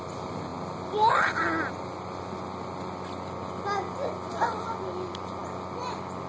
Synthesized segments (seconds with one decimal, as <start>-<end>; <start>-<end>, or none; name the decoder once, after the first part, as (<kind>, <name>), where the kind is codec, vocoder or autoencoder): none